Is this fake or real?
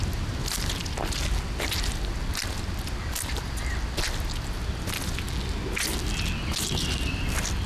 real